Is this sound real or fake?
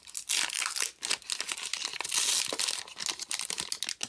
real